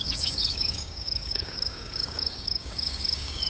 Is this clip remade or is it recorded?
remade